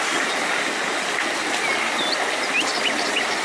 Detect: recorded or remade recorded